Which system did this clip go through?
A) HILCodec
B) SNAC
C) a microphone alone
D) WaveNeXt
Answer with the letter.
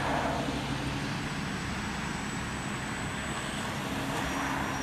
C